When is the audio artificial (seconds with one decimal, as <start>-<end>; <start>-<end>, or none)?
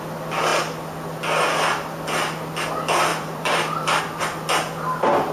3.1-4.0